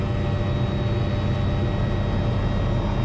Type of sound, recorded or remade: recorded